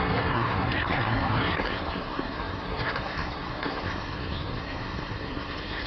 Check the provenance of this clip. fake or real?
fake